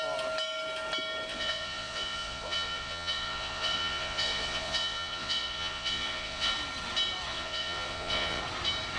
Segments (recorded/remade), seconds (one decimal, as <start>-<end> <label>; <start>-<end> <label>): 0.0-1.3 recorded; 1.3-6.5 remade; 6.5-7.3 recorded; 7.3-8.4 remade; 8.4-9.0 recorded